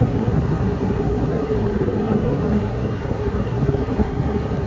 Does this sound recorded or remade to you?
remade